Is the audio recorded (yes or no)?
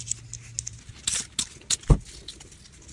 yes